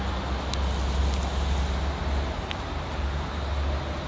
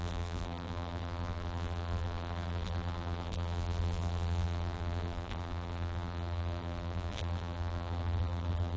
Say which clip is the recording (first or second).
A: first